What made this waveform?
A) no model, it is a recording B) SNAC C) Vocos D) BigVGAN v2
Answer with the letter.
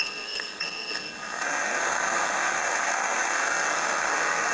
B